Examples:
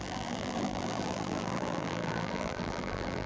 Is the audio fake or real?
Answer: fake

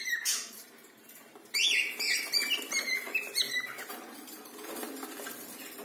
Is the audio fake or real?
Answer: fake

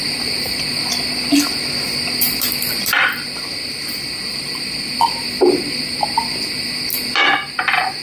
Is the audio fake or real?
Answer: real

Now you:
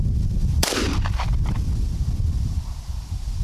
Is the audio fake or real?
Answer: fake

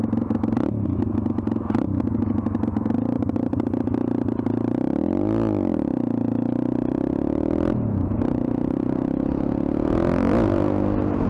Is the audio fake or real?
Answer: real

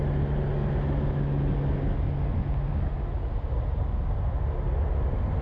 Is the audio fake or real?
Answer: real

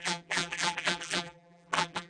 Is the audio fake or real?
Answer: fake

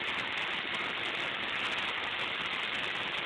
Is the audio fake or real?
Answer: real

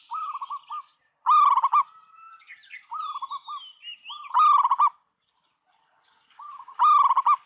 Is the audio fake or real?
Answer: real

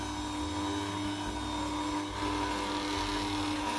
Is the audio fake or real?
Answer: real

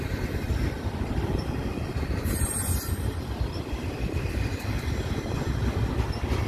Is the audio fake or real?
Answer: fake